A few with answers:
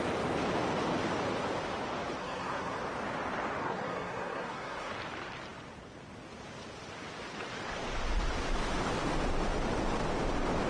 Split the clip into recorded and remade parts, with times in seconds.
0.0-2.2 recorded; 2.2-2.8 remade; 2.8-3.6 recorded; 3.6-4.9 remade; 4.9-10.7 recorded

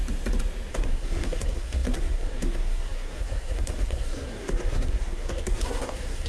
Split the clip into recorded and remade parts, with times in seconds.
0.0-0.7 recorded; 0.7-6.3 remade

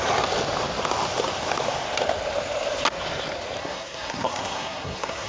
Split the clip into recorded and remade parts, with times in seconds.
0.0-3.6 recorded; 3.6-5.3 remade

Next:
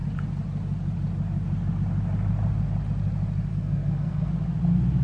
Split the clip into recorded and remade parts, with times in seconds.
0.0-3.5 recorded; 3.5-4.3 remade; 4.3-5.0 recorded